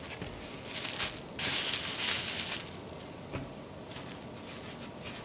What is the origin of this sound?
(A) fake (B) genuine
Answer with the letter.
B